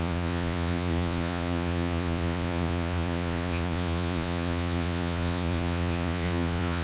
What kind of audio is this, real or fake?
fake